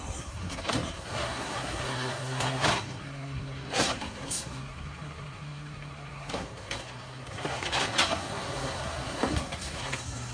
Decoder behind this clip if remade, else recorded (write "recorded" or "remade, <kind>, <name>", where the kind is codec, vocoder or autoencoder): remade, codec, SNAC